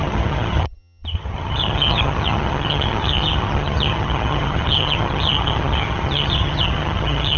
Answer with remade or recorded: remade